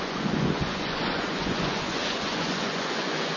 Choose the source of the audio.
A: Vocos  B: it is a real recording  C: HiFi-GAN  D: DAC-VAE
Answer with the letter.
A